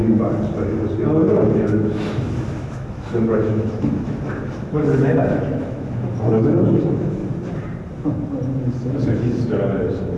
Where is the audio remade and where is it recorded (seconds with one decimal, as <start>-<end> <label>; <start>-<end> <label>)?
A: 0.0-1.5 recorded; 1.5-7.2 remade; 7.2-8.7 recorded; 8.7-10.2 remade